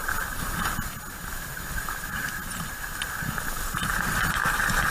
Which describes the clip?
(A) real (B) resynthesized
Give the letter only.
A